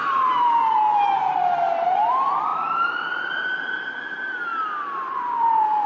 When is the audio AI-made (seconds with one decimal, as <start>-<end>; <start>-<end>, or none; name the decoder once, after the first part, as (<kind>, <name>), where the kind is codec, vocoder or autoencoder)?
0.0-4.5 (vocoder, BigVGAN v2); 5.1-5.9

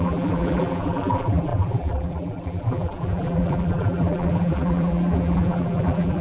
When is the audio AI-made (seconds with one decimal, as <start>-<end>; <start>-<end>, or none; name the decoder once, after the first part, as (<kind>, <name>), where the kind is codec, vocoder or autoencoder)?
0.0-6.2 (vocoder, BigVGAN v2)